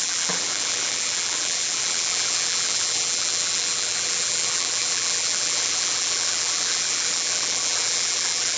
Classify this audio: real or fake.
fake